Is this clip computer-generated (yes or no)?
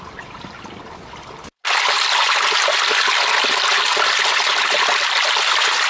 no